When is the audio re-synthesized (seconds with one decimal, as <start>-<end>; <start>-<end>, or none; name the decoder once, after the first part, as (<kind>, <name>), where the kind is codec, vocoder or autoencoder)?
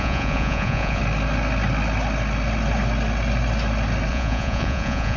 0.0-1.0 (vocoder, Vocos); 4.1-5.2